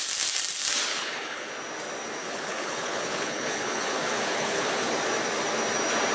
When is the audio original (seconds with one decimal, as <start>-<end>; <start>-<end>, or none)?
0.0-0.9; 1.5-2.2; 4.9-6.1